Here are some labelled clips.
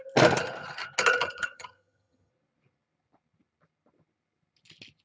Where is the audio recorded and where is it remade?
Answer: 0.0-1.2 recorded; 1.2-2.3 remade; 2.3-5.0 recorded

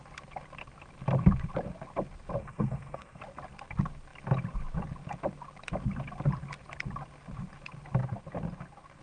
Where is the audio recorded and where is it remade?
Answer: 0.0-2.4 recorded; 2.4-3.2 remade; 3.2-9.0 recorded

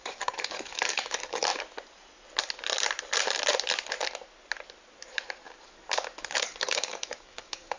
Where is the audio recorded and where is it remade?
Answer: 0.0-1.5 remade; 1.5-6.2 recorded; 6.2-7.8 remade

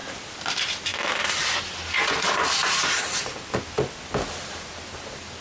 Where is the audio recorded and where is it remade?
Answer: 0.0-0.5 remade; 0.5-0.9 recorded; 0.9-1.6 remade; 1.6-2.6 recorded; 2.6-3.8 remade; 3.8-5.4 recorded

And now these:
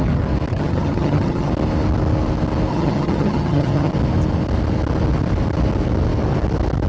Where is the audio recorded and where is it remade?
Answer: 0.0-0.5 recorded; 0.5-1.5 remade; 1.5-2.7 recorded; 2.7-3.9 remade; 3.9-6.9 recorded

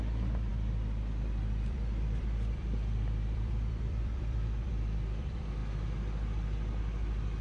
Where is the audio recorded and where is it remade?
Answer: 0.0-5.6 remade; 5.6-6.8 recorded; 6.8-7.4 remade